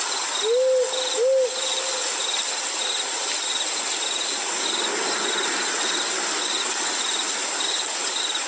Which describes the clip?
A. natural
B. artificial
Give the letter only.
A